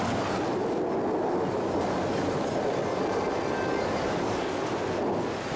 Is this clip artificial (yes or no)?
no